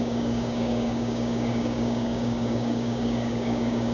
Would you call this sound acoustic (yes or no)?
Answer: no